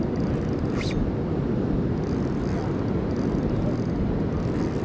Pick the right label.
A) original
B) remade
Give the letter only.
A